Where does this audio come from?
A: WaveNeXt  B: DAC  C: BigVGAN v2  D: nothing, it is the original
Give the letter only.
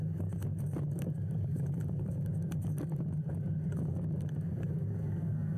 B